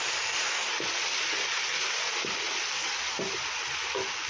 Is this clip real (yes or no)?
yes